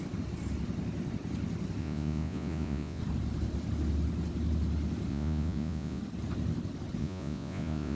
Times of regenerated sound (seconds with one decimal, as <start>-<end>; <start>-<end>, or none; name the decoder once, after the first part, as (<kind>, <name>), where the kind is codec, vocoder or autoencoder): 1.8-3.0 (vocoder, Vocos); 5.1-6.0; 7.0-8.0